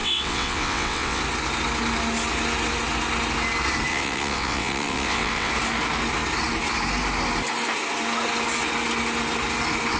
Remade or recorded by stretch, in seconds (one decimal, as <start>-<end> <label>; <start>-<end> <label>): 0.0-1.2 remade; 1.2-3.9 recorded; 3.9-5.5 remade; 5.5-10.0 recorded